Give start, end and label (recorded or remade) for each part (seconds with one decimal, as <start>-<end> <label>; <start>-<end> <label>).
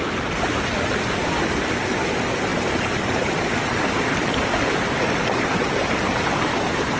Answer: 0.0-7.0 recorded